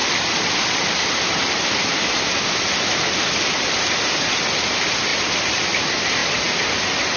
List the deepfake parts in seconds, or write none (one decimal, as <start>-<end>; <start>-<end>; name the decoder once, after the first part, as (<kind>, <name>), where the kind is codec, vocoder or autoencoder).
none